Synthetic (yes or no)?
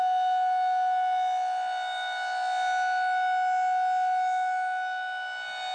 no